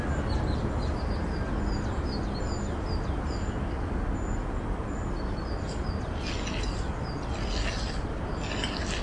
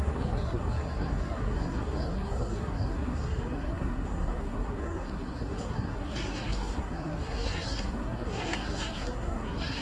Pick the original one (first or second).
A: first